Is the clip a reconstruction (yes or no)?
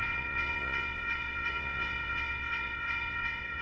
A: yes